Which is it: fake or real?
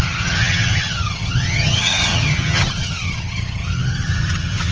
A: fake